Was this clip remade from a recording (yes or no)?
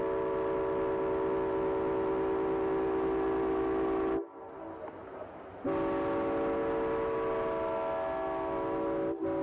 no